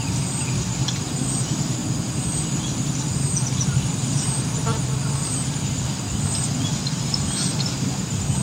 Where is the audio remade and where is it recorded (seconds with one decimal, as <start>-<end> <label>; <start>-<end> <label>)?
0.0-8.4 recorded